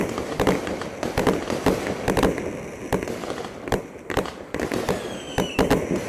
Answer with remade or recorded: recorded